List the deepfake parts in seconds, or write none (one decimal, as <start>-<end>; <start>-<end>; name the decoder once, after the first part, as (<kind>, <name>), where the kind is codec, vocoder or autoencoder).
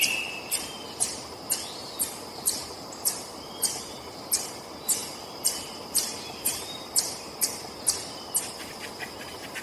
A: 1.8-4.0 (vocoder, BigVGAN v2); 5.0-7.3